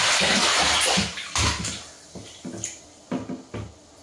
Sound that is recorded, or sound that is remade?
recorded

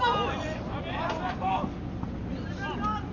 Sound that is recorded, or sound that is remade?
recorded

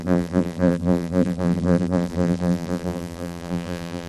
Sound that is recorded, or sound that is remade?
remade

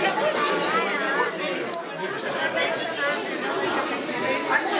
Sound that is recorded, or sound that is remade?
recorded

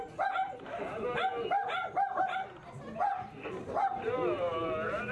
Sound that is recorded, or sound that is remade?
recorded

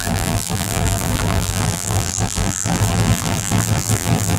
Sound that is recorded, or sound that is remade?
remade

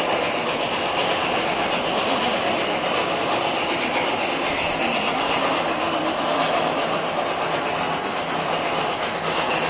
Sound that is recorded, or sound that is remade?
recorded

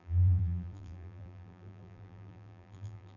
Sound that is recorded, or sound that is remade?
remade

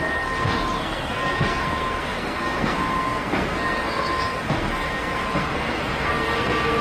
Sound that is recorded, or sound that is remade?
remade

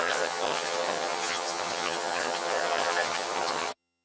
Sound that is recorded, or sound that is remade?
remade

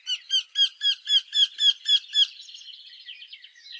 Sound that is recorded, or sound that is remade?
recorded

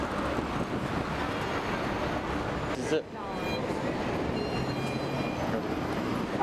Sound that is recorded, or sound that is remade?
recorded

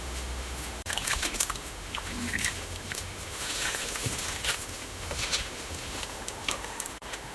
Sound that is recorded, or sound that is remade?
remade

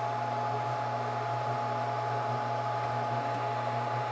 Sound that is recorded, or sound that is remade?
recorded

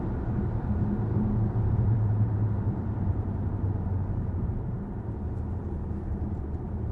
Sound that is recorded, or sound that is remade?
remade